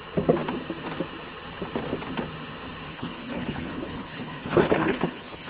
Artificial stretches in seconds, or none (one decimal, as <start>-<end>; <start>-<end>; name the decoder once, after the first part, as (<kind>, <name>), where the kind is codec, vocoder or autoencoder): 2.9-5.5 (codec, HILCodec)